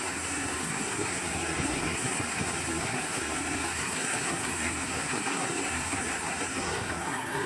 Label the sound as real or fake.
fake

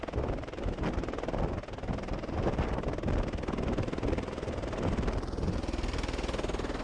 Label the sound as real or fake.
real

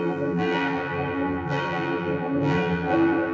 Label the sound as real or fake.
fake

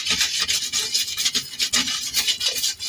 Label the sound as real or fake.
real